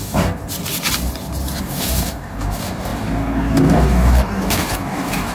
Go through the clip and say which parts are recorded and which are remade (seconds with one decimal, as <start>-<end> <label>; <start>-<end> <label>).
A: 0.0-0.4 remade; 0.4-1.6 recorded; 1.6-5.3 remade

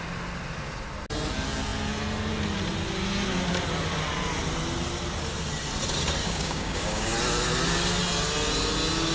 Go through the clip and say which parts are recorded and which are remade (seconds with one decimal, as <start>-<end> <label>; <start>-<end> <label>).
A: 0.0-6.2 recorded; 6.2-7.1 remade; 7.1-9.1 recorded

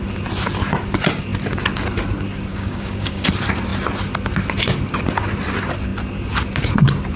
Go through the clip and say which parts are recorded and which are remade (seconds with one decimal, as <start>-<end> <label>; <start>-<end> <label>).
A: 0.0-2.5 recorded; 2.5-3.3 remade; 3.3-7.2 recorded

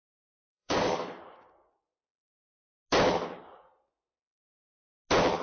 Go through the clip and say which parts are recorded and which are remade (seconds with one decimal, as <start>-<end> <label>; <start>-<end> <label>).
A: 0.0-0.4 recorded; 0.4-1.2 remade; 1.2-5.4 recorded

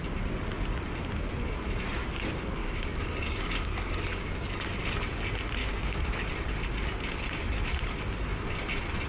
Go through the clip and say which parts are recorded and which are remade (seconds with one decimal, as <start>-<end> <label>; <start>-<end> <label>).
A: 0.0-2.6 recorded; 2.6-4.5 remade; 4.5-5.6 recorded; 5.6-6.3 remade; 6.3-9.1 recorded

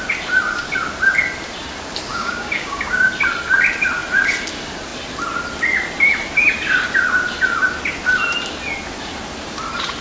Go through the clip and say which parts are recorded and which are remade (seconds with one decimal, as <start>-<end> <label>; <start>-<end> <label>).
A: 0.0-2.1 recorded; 2.1-3.1 remade; 3.1-10.0 recorded

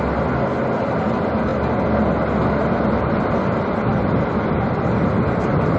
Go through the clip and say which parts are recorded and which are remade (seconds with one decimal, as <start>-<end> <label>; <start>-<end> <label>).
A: 0.0-5.8 recorded

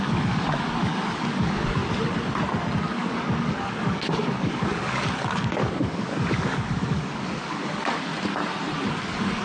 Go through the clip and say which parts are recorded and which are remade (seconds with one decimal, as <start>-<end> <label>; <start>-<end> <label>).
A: 0.0-1.8 remade; 1.8-2.9 recorded; 2.9-8.1 remade; 8.1-8.9 recorded; 8.9-9.4 remade